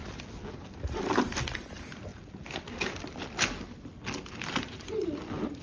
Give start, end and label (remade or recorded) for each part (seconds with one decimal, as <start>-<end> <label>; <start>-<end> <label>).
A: 0.0-2.1 remade; 2.1-5.6 recorded